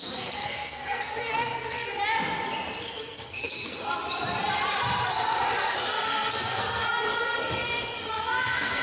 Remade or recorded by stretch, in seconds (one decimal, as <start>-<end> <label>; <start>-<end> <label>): 0.0-1.9 remade; 1.9-2.9 recorded; 2.9-4.0 remade; 4.0-5.7 recorded; 5.7-8.8 remade